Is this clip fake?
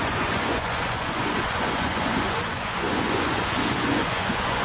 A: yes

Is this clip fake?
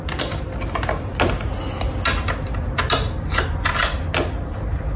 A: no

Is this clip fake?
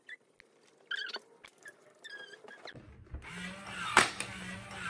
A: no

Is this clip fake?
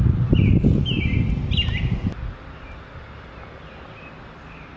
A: no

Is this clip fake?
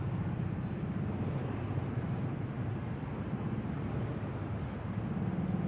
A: no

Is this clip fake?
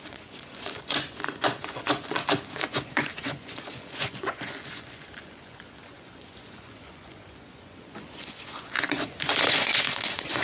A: yes